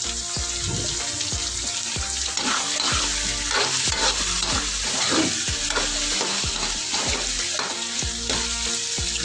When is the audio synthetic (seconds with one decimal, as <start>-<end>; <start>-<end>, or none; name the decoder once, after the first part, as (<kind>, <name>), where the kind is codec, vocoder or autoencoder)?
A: none

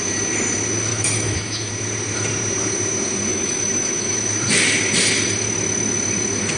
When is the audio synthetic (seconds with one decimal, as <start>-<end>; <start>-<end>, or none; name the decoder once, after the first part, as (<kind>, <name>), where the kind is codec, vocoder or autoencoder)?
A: 0.9-1.7 (autoencoder, DAC-VAE); 3.3-4.3

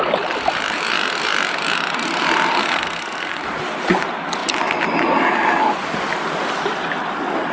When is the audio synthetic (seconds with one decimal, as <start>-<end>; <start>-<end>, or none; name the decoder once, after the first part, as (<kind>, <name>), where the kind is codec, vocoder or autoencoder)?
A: 2.6-3.4 (codec, SNAC)

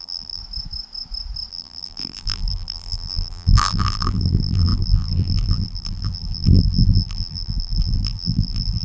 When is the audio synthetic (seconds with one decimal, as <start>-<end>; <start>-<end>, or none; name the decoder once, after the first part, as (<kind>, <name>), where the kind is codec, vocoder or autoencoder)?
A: 0.0-0.4 (vocoder, BigVGAN v2); 1.5-8.8

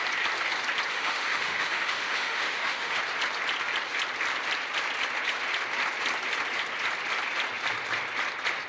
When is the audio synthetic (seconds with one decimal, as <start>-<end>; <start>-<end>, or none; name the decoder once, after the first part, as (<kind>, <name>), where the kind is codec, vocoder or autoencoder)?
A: 0.9-3.0 (autoencoder, DAC-VAE)